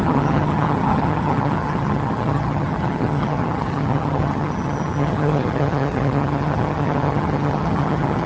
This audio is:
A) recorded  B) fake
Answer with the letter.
B